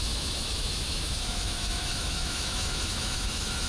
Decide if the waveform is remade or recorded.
remade